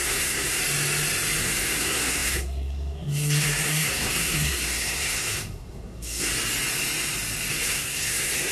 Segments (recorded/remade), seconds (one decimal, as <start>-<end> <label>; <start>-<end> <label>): 0.0-0.6 remade; 0.6-1.4 recorded; 1.4-6.3 remade; 6.3-7.5 recorded; 7.5-8.5 remade